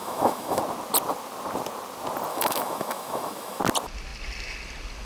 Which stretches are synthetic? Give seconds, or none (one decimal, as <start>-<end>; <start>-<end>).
0.0-0.6; 2.3-3.6